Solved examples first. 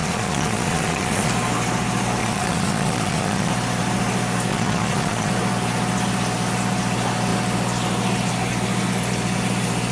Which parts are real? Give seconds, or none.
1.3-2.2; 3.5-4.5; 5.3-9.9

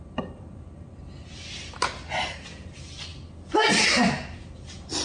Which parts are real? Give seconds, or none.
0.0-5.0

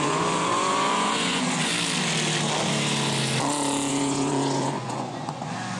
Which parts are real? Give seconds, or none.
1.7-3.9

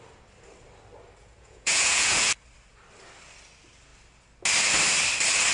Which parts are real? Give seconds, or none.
0.0-1.2; 2.3-5.5